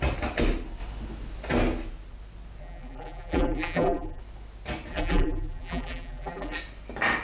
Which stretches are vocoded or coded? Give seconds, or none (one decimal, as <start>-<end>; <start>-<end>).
2.6-4.2; 4.9-6.6